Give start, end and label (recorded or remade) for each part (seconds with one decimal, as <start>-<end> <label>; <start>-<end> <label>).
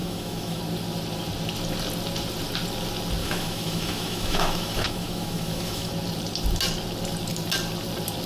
0.0-0.6 remade; 0.6-3.2 recorded; 3.2-5.9 remade; 5.9-8.3 recorded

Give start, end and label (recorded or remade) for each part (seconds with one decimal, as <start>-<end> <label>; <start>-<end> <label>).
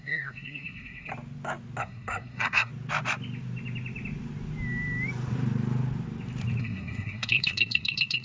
0.0-1.1 remade; 1.1-1.8 recorded; 1.8-2.7 remade; 2.7-6.6 recorded; 6.6-8.2 remade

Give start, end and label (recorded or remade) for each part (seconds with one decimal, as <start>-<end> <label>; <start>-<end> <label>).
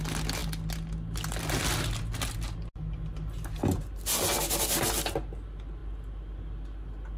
0.0-7.2 recorded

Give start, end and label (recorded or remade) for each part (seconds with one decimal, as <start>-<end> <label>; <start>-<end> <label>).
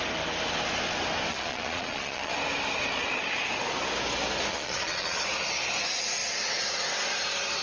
0.0-1.3 recorded; 1.3-2.3 remade; 2.3-4.5 recorded; 4.5-5.2 remade; 5.2-7.6 recorded